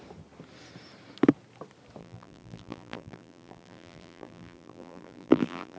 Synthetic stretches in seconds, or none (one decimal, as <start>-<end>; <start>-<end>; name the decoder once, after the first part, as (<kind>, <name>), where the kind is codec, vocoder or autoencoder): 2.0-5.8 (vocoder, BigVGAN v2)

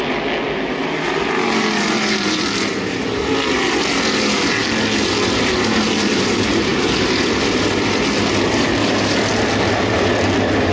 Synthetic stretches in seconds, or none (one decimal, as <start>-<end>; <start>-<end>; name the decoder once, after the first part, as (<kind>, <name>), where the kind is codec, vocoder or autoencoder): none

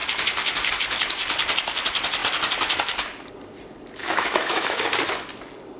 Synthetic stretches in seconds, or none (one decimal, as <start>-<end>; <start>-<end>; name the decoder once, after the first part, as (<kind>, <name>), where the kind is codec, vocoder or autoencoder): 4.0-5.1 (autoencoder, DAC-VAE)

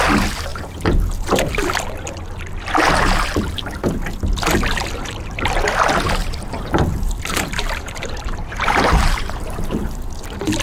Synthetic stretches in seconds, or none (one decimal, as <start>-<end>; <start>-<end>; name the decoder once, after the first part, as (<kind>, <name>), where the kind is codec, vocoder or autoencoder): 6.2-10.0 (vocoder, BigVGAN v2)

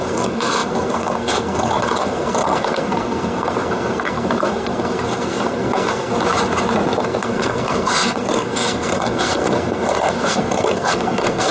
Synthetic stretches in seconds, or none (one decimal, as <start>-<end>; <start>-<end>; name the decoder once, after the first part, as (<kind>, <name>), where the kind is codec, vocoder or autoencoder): 0.0-6.1 (codec, SNAC); 7.0-11.5

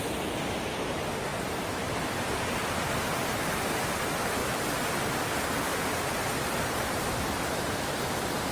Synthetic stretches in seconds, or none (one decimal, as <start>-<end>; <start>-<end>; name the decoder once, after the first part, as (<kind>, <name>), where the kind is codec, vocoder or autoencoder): 1.3-2.9 (vocoder, BigVGAN v2); 5.7-7.7